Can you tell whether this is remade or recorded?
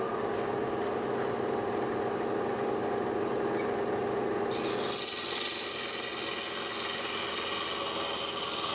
recorded